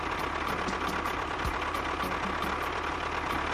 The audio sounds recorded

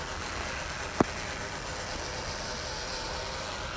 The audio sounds recorded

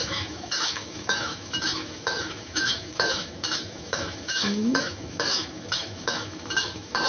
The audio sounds remade